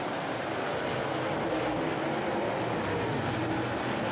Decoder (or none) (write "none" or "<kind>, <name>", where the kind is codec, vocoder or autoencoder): none